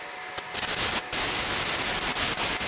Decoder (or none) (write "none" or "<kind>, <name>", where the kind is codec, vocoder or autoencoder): none